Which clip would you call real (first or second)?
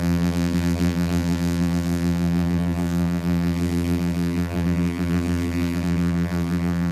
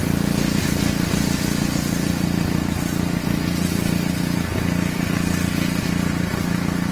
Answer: second